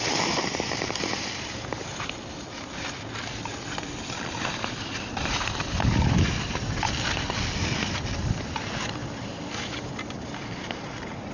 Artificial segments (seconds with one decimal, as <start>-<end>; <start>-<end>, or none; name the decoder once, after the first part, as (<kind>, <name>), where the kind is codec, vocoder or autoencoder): 0.0-11.3 (vocoder, BigVGAN v2)